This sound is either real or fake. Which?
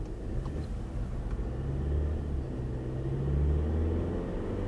real